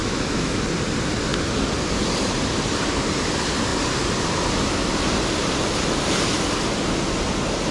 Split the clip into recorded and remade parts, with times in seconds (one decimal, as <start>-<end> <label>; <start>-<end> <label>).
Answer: 0.0-0.6 remade; 0.6-7.7 recorded